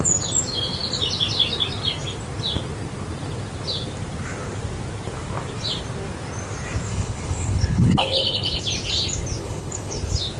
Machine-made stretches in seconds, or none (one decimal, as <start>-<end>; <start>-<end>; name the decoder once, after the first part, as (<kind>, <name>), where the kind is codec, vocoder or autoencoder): 6.9-8.6 (codec, HILCodec); 9.4-10.0